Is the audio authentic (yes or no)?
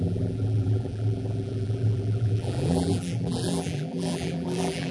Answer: no